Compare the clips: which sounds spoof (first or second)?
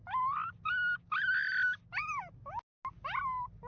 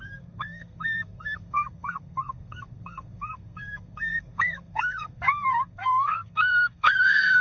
second